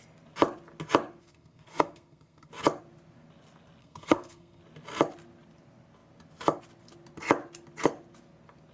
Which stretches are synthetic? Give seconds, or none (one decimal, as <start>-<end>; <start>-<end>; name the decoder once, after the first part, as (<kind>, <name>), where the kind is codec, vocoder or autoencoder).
1.2-2.5 (codec, SNAC); 3.8-4.6